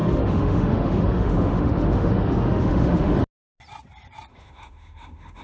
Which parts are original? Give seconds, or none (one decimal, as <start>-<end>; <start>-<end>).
3.1-4.3